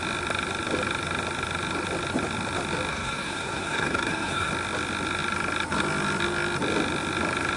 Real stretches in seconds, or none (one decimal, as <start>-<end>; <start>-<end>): 0.0-2.9; 4.5-7.6